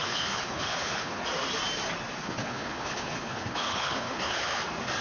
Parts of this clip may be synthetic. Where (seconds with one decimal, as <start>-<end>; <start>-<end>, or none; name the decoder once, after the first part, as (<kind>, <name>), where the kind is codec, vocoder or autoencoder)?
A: 0.0-1.2 (codec, HILCodec); 2.2-4.6